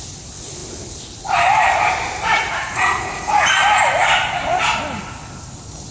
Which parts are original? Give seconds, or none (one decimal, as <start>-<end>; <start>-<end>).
0.0-2.3; 3.3-5.9